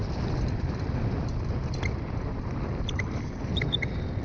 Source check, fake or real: fake